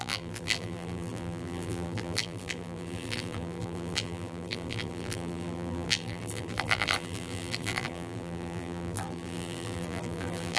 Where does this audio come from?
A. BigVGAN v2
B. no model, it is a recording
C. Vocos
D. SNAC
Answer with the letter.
A